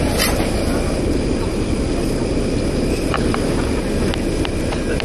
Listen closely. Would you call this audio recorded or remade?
recorded